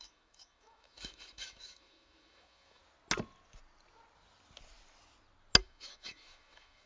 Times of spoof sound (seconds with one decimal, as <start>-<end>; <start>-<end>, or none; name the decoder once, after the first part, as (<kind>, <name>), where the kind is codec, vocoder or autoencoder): 0.0-2.8 (autoencoder, DAC-VAE); 5.6-6.9